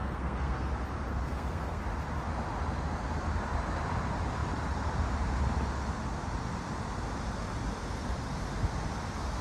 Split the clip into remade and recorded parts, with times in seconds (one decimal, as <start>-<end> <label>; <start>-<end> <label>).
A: 0.0-0.7 remade; 0.7-1.1 recorded; 1.1-1.8 remade; 1.8-9.4 recorded